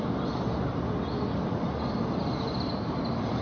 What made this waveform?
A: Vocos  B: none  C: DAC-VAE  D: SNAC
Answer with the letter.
B